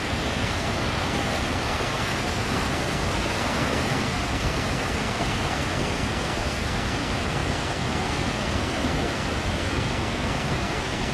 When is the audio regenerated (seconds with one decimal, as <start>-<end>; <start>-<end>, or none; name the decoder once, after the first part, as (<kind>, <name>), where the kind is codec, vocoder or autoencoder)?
0.0-11.1 (codec, SNAC)